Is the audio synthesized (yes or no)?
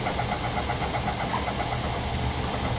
no